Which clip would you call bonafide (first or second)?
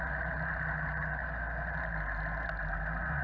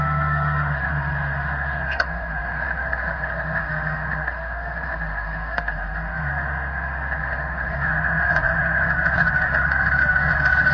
first